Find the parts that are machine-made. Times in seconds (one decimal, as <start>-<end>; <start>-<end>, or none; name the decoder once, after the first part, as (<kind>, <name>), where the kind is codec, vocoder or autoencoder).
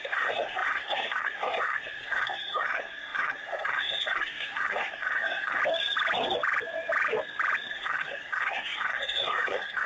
0.0-5.6 (codec, SNAC); 7.7-9.9